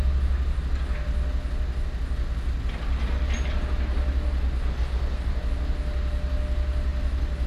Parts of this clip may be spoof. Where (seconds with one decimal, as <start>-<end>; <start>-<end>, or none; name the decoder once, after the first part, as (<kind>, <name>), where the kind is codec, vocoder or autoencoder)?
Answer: none